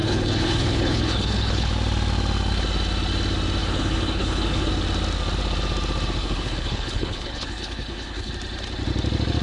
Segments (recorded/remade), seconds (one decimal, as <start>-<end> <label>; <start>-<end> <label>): 0.0-1.7 remade; 1.7-3.6 recorded; 3.6-4.7 remade; 4.7-6.2 recorded; 6.2-8.3 remade; 8.3-9.4 recorded